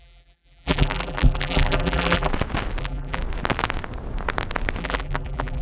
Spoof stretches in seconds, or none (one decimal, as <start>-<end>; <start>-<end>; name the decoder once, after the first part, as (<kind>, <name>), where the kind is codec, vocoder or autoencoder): 0.0-2.3 (vocoder, BigVGAN v2); 2.8-3.2; 4.8-5.6